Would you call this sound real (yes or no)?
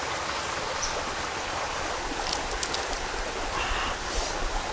yes